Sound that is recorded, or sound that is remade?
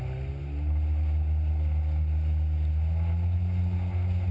recorded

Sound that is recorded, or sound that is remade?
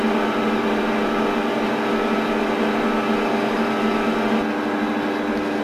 recorded